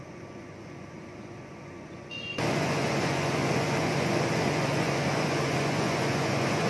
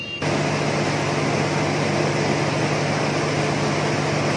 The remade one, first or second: first